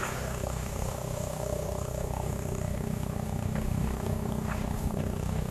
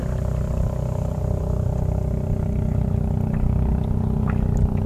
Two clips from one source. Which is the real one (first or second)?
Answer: second